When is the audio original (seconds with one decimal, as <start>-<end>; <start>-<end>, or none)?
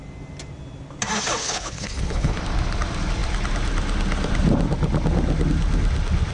0.0-1.4; 2.4-6.3